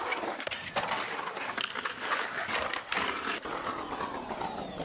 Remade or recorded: recorded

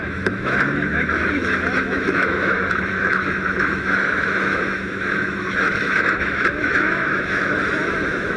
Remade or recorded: remade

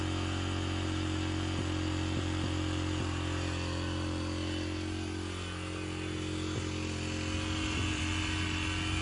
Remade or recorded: recorded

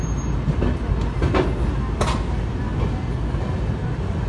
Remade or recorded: recorded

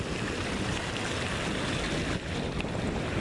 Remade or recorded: recorded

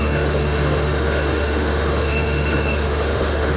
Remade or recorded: remade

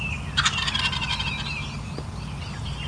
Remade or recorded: recorded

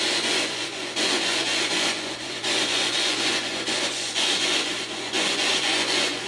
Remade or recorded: remade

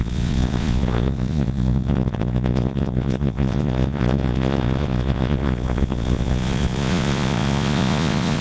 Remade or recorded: remade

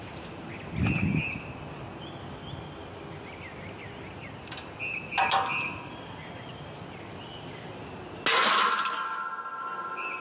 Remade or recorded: recorded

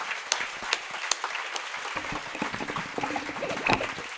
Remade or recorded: recorded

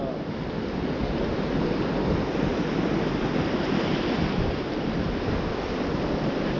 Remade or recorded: recorded